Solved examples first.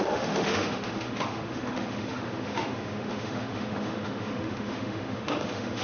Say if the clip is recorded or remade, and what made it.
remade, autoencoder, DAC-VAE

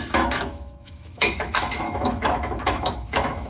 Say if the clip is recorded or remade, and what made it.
remade, autoencoder, DAC-VAE